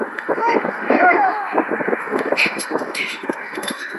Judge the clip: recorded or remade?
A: remade